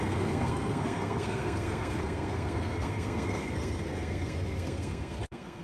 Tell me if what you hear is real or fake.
fake